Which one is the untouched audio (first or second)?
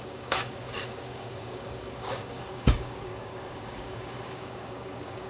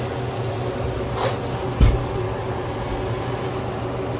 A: second